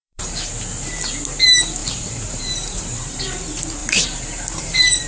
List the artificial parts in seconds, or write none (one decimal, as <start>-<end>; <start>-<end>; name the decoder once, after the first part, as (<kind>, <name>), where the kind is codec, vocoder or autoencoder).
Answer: 0.0-0.5 (vocoder, BigVGAN v2); 1.8-3.2; 3.8-5.1